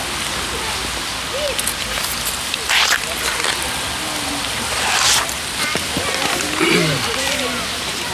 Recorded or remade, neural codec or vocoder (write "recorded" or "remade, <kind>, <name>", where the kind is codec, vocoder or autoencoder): recorded